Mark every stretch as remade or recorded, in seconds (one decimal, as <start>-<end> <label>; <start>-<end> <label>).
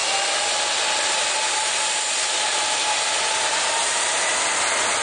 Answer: 0.0-5.0 recorded